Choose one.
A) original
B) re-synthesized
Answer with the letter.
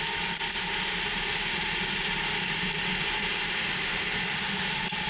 A